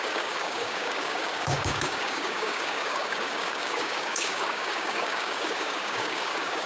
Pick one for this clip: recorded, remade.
remade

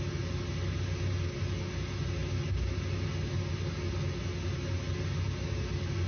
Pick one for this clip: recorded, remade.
recorded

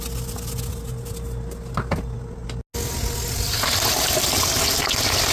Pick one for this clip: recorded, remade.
recorded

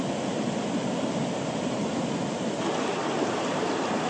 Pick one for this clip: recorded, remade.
recorded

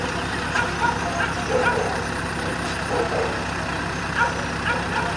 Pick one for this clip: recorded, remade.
recorded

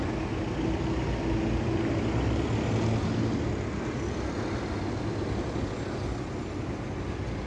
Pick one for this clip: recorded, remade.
recorded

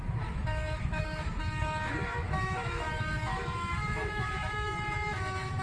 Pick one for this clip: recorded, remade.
remade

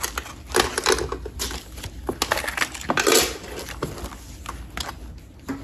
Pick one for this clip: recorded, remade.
recorded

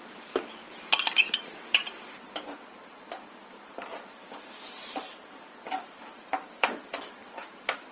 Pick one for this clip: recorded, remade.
remade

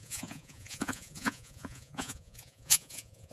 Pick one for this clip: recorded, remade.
remade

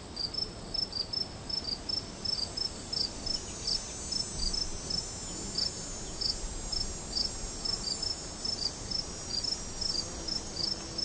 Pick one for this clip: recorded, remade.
recorded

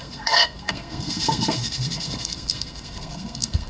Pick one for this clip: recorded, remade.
remade